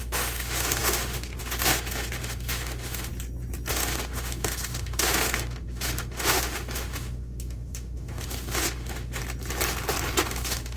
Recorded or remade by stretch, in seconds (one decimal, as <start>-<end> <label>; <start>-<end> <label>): 0.0-3.1 remade; 3.1-3.7 recorded; 3.7-9.2 remade; 9.2-10.2 recorded; 10.2-10.8 remade